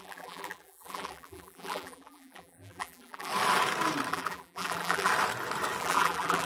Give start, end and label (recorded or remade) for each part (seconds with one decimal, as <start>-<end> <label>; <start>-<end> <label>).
0.0-3.3 remade; 3.3-4.1 recorded; 4.1-5.1 remade; 5.1-5.8 recorded; 5.8-6.5 remade